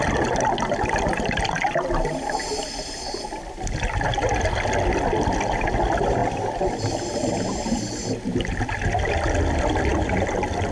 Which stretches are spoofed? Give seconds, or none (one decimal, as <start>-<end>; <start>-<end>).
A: none